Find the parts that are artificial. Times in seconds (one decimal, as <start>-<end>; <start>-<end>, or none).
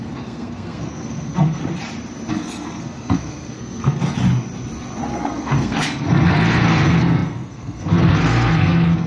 0.0-1.6; 2.3-4.2; 5.1-9.1